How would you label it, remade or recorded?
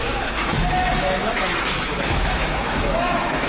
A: remade